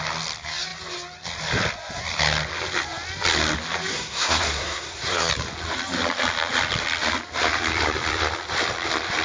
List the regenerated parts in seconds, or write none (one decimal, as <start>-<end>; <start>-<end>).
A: 3.9-5.3